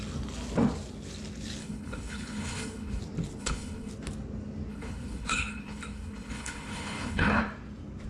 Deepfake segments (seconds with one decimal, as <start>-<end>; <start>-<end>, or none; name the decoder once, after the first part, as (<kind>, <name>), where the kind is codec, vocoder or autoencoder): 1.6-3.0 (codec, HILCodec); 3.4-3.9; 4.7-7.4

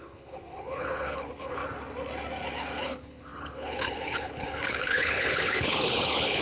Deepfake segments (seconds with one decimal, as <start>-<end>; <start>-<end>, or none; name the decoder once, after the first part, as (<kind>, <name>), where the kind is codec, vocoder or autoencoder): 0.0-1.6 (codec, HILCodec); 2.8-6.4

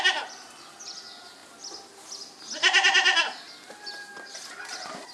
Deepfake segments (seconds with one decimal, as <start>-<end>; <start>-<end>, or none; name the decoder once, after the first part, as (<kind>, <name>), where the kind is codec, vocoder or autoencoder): none

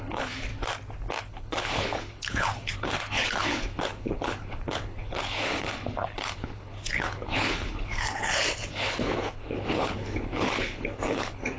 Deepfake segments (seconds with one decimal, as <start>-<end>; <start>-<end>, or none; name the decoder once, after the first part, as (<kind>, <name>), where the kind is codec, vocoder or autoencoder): 0.0-0.5 (codec, HILCodec); 1.2-11.6

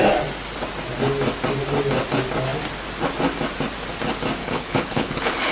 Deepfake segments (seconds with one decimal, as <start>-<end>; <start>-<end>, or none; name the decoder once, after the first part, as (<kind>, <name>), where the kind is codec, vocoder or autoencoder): 4.4-5.5 (codec, HILCodec)